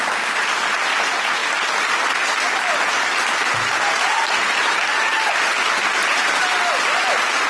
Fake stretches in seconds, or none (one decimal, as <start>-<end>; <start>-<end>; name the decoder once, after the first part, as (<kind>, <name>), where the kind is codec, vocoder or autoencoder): none